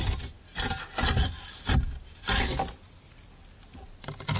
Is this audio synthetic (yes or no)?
no